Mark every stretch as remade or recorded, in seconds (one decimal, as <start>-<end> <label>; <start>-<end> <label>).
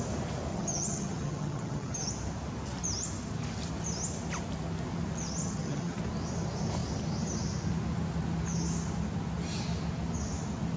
0.0-0.5 recorded; 0.5-2.1 remade; 2.1-5.4 recorded; 5.4-6.0 remade; 6.0-10.8 recorded